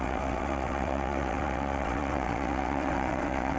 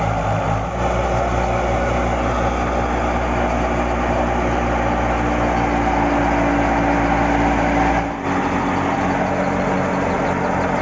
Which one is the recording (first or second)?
second